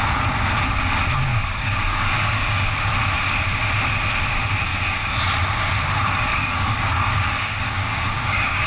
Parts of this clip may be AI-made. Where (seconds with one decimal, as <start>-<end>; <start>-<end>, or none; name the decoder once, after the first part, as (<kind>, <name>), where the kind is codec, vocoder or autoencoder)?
1.3-2.7 (codec, DAC); 4.7-5.2; 6.3-8.7